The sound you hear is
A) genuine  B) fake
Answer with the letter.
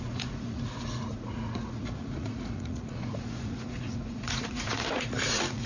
B